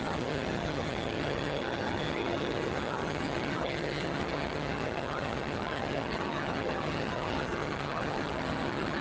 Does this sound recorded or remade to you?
remade